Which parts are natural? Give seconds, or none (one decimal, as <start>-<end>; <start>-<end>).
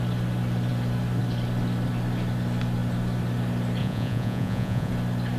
0.0-3.8; 4.9-5.4